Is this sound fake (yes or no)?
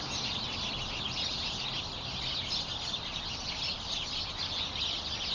no